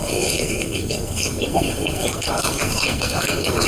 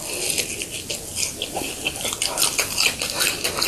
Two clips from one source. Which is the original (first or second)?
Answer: second